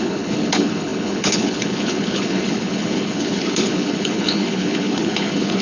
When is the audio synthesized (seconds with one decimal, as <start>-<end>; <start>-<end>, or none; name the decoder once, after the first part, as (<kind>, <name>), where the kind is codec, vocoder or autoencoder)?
0.0-5.6 (codec, HILCodec)